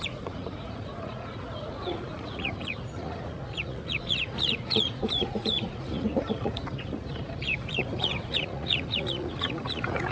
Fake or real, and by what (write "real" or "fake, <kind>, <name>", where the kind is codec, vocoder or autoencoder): fake, vocoder, Vocos